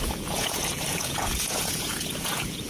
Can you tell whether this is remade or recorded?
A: remade